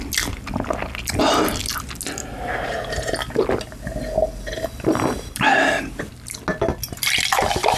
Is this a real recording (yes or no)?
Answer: yes